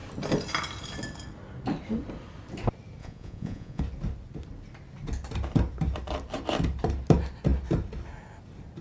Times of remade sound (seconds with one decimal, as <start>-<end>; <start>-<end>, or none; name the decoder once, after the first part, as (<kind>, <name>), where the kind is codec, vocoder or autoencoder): 3.0-3.8 (vocoder, Vocos)